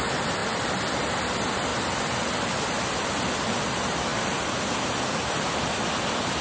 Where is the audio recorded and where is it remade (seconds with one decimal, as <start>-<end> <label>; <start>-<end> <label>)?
0.0-6.4 recorded